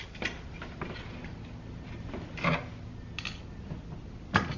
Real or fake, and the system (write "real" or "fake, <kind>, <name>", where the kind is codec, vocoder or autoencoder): real